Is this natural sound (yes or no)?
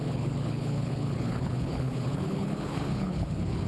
no